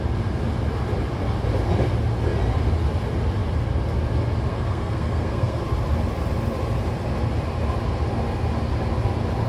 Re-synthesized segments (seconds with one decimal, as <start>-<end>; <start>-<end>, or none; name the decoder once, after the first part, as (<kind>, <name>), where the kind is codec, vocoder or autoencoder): 4.5-5.6 (codec, SNAC)